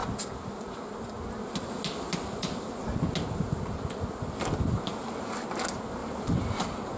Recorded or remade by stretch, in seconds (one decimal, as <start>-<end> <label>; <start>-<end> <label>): 0.0-1.1 remade; 1.1-6.0 recorded; 6.0-6.6 remade; 6.6-7.0 recorded

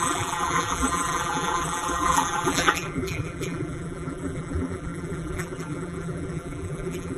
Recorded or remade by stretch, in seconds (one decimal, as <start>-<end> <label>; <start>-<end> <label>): 0.0-7.2 remade

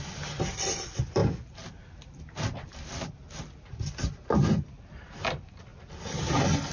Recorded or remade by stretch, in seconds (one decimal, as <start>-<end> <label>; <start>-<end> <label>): 0.0-1.2 remade; 1.2-4.7 recorded; 4.7-5.7 remade; 5.7-6.7 recorded

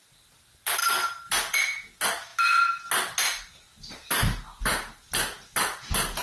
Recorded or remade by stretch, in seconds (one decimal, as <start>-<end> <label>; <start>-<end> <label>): 0.0-0.8 recorded; 0.8-1.6 remade; 1.6-6.2 recorded

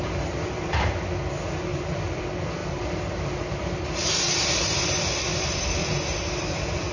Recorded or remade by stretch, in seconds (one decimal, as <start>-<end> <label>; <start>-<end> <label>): 0.0-0.9 remade; 0.9-1.7 recorded; 1.7-2.2 remade; 2.2-2.6 recorded; 2.6-6.9 remade

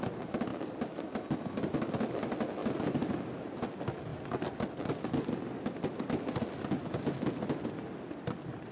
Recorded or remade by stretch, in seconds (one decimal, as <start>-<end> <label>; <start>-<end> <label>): 0.0-0.5 recorded; 0.5-2.1 remade; 2.1-8.7 recorded